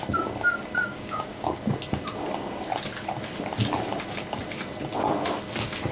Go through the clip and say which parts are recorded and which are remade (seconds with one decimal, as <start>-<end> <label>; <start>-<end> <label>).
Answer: 0.0-0.9 recorded; 0.9-1.7 remade; 1.7-5.9 recorded